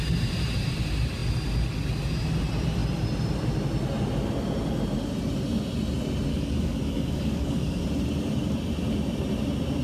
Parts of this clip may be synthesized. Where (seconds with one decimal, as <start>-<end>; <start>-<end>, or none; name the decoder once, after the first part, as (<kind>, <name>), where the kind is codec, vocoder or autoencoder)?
6.3-7.8 (codec, DAC)

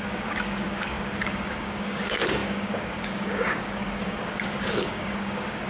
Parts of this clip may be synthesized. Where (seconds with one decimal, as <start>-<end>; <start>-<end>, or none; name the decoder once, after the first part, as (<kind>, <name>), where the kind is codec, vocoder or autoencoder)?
0.0-5.7 (codec, DAC)